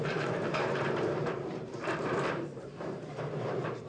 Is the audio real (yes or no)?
no